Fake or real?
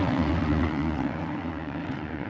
fake